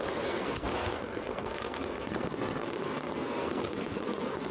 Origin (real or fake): fake